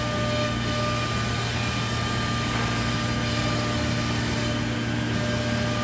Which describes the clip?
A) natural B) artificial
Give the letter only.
A